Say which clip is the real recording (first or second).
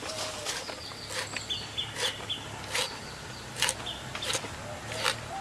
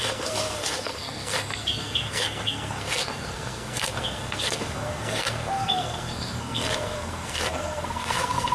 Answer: first